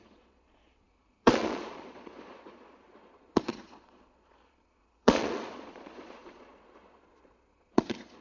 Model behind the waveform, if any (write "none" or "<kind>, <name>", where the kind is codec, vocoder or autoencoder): vocoder, Vocos